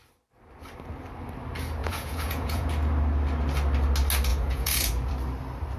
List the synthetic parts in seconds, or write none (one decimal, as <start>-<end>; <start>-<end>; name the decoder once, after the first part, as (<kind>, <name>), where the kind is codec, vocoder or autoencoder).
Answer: 1.8-2.7 (vocoder, Vocos); 4.3-5.1